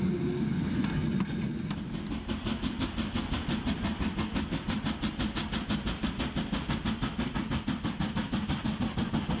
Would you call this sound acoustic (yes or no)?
yes